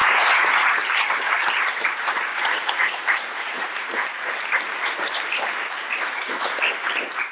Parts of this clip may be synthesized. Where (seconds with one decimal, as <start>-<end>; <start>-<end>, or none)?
0.0-0.8; 2.3-4.3